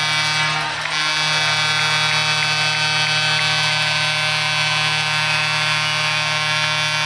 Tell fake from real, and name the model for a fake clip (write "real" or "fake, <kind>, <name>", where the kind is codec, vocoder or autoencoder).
real